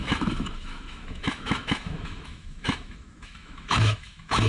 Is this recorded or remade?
remade